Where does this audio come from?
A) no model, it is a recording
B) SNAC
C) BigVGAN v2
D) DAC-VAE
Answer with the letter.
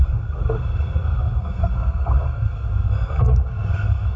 B